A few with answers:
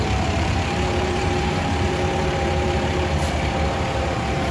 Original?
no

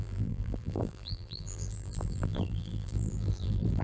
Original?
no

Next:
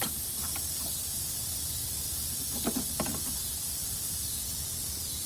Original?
no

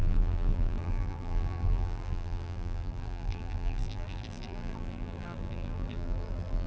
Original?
no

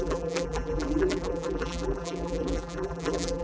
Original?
no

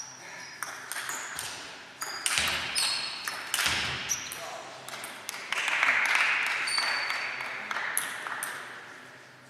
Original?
yes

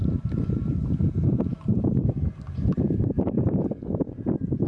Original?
no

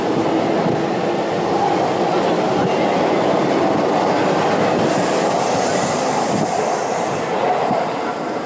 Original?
yes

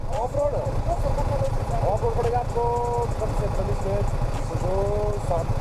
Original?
yes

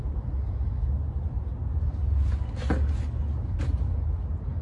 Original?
yes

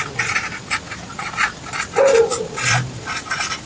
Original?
yes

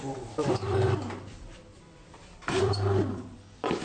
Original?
no